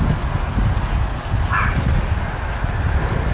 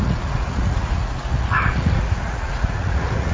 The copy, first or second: second